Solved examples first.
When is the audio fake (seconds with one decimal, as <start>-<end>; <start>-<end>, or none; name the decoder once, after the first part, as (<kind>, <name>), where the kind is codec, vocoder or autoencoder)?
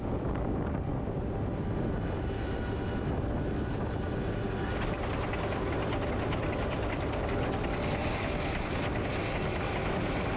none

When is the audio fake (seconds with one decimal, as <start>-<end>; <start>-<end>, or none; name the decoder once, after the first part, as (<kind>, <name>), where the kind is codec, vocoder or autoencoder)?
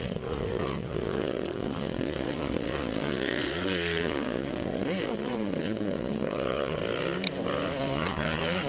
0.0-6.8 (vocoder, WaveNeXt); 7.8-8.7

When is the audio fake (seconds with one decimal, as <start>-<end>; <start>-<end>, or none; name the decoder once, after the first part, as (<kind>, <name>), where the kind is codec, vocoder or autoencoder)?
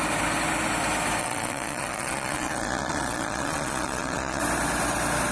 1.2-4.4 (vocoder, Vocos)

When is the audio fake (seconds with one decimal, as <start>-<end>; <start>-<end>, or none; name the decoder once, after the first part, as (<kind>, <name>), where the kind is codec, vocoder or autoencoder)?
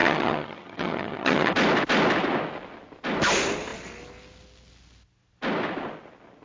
0.0-1.5 (vocoder, HiFi-GAN)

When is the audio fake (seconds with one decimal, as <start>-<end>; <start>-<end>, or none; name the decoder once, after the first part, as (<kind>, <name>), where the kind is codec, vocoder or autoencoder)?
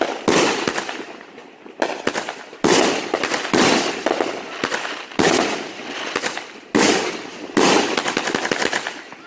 none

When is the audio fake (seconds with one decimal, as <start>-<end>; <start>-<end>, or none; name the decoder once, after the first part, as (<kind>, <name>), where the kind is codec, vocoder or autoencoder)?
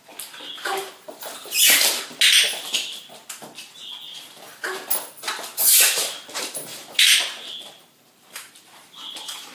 6.7-8.5 (vocoder, BigVGAN v2)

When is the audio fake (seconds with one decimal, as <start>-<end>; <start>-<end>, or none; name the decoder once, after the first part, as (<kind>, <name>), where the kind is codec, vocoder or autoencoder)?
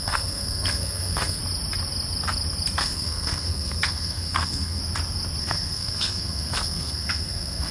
0.0-1.4 (codec, SNAC); 2.8-4.8; 5.4-7.7